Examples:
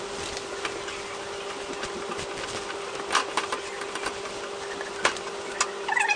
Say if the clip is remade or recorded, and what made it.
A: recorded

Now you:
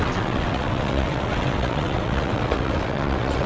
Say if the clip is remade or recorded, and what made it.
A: remade, vocoder, WaveNeXt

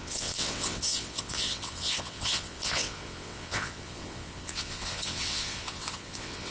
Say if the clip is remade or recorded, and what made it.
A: remade, vocoder, WaveNeXt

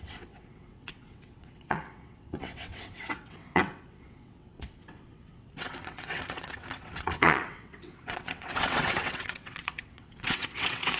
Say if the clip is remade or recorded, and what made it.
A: remade, vocoder, WaveNeXt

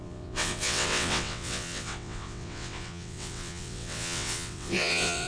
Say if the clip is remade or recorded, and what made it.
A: remade, vocoder, WaveNeXt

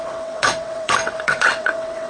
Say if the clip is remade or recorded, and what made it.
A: remade, vocoder, WaveNeXt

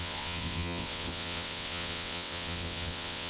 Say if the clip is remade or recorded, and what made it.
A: remade, vocoder, WaveNeXt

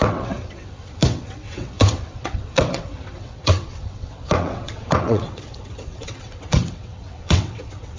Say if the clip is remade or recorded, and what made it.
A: remade, vocoder, WaveNeXt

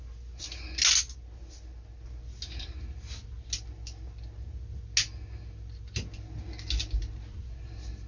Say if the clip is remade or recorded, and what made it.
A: recorded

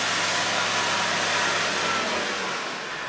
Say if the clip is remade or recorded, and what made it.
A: recorded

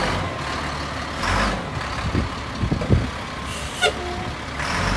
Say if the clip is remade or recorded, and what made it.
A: recorded